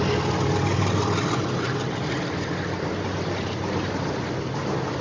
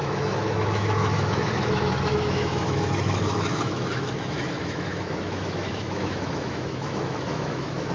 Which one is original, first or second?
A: first